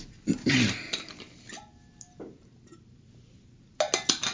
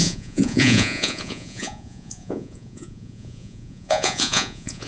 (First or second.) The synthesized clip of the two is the second